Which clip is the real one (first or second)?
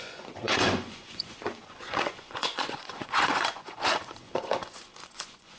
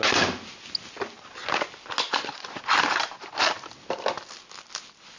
second